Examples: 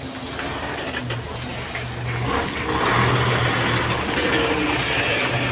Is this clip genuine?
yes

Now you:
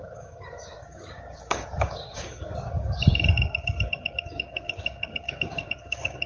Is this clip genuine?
no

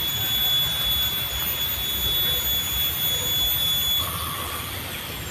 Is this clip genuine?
yes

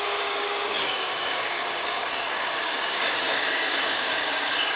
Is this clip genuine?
no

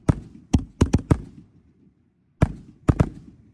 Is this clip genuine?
yes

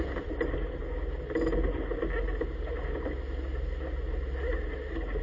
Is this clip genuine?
yes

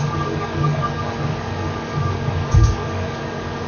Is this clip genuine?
no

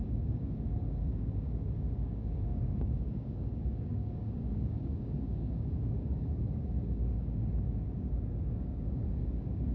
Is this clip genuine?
no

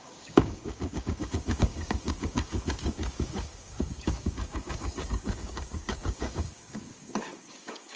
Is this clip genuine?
no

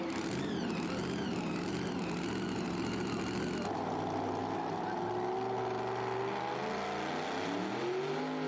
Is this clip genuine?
yes